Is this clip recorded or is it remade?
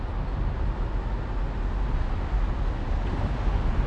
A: recorded